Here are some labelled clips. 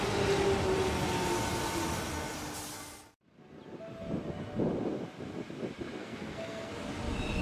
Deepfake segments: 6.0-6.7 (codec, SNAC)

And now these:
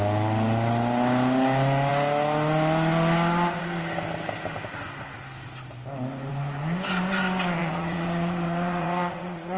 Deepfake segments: 7.6-9.6 (vocoder, Vocos)

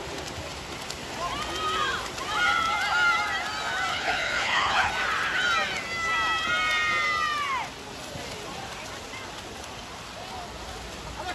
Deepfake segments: 3.9-4.9 (codec, HILCodec)

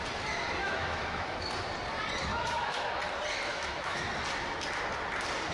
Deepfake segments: 0.6-1.5 (autoencoder, DAC-VAE); 2.3-3.0; 3.5-4.1

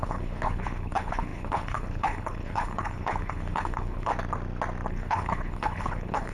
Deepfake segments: 0.0-4.1 (codec, HILCodec); 4.9-6.3

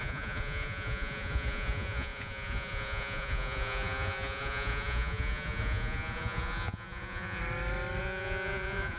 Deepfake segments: 0.0-7.4 (vocoder, Vocos); 8.0-9.0

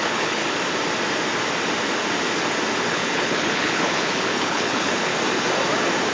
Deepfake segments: 0.0-0.4 (codec, HILCodec); 2.9-5.1